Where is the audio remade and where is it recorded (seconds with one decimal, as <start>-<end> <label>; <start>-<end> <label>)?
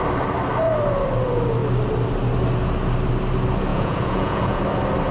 0.0-3.7 recorded; 3.7-4.6 remade; 4.6-5.1 recorded